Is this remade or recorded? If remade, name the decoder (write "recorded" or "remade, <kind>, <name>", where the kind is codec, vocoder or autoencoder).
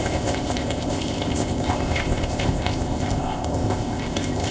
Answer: remade, codec, ZipCodec